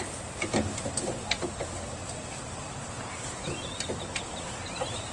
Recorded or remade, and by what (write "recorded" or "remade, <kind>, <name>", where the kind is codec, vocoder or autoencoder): recorded